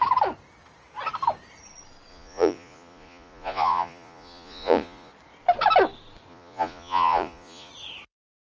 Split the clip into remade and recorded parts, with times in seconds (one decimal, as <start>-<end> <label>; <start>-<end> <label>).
0.0-2.1 recorded; 2.1-5.1 remade; 5.1-6.3 recorded; 6.3-7.7 remade; 7.7-8.5 recorded